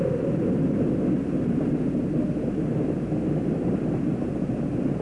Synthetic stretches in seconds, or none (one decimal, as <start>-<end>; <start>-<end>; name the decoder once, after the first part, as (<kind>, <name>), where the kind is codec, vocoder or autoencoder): 2.7-3.8 (vocoder, BigVGAN v2)